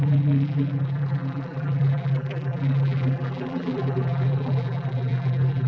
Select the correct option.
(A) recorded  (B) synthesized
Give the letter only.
B